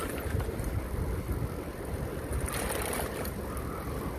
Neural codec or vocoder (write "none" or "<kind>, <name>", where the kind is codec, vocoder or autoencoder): none